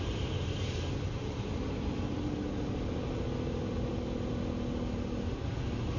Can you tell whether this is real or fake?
real